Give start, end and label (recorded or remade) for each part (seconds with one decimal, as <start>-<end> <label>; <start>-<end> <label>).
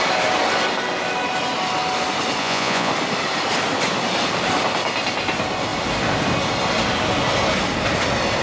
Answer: 0.0-2.4 recorded; 2.4-2.9 remade; 2.9-8.4 recorded